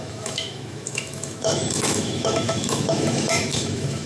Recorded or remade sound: remade